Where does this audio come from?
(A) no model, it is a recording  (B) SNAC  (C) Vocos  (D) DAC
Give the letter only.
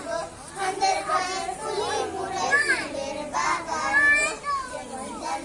A